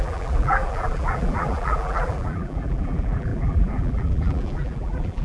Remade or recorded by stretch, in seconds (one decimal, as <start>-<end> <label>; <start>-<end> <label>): 0.0-5.2 remade